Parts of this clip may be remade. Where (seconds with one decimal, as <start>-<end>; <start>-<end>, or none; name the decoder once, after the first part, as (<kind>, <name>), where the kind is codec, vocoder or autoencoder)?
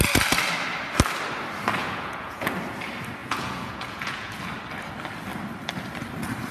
1.8-2.5 (vocoder, Vocos); 3.2-4.4